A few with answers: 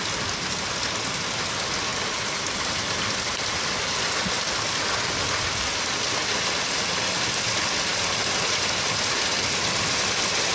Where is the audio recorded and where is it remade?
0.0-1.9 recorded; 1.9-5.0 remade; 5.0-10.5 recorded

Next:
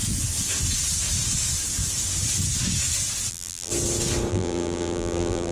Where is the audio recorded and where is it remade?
0.0-3.3 recorded; 3.3-3.7 remade; 3.7-4.3 recorded; 4.3-5.5 remade

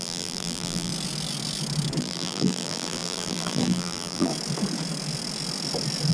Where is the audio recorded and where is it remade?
0.0-0.9 remade; 0.9-2.0 recorded; 2.0-4.3 remade; 4.3-6.1 recorded